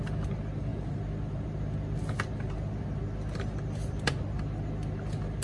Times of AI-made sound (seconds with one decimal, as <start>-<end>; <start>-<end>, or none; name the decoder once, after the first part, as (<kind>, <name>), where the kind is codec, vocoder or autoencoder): none